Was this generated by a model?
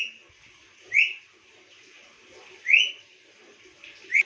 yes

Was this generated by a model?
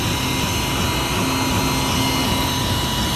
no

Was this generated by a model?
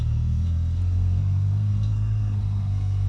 yes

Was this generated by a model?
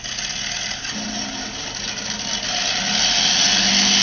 no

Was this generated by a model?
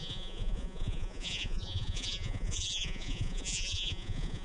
yes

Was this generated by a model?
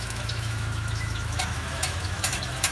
yes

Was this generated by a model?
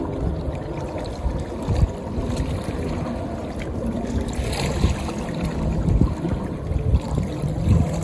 no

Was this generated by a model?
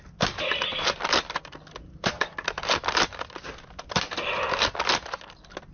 no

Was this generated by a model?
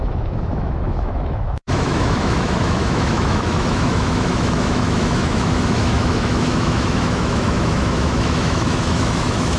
yes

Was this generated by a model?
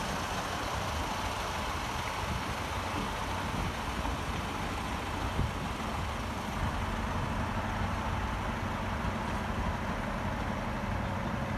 no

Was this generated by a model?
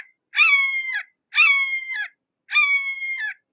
no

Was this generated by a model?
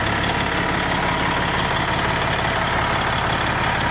no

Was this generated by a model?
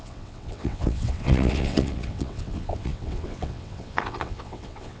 yes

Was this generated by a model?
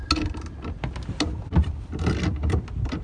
no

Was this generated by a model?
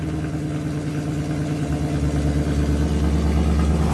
no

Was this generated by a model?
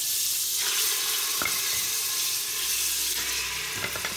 no